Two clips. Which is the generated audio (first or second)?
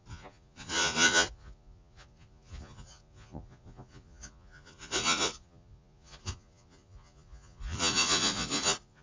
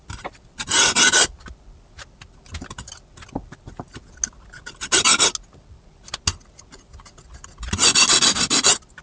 first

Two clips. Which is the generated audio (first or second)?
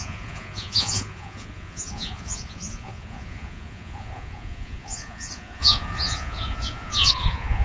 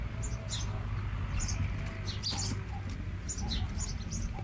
first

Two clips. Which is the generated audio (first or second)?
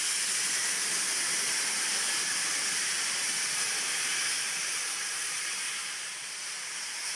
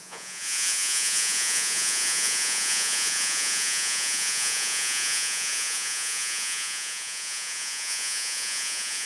second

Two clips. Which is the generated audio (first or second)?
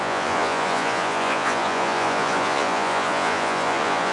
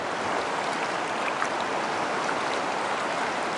first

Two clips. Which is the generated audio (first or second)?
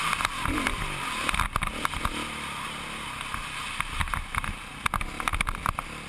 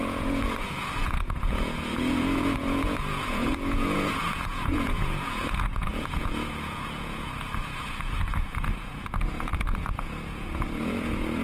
second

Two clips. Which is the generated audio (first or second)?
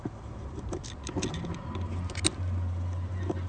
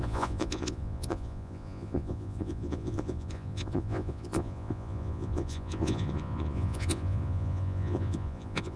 second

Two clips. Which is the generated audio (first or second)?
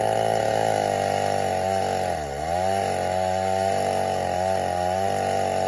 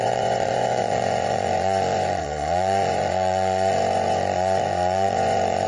second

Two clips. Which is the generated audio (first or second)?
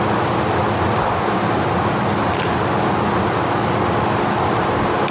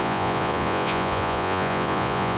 second